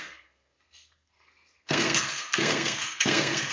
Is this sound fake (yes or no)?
yes